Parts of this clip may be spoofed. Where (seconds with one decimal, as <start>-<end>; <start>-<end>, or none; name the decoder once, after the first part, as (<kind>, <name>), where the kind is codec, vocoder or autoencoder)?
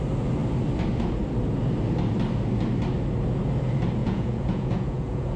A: 4.0-5.4 (vocoder, Vocos)